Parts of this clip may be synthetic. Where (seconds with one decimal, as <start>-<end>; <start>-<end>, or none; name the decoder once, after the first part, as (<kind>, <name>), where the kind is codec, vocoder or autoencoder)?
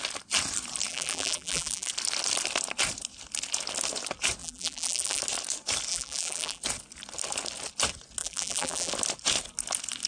0.9-1.9 (vocoder, BigVGAN v2); 4.4-5.2; 5.9-6.6; 8.2-8.9